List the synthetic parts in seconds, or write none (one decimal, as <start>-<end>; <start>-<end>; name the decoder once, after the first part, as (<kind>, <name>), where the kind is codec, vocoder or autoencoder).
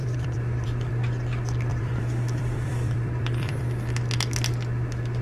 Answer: 0.0-0.9 (vocoder, BigVGAN v2); 1.7-3.6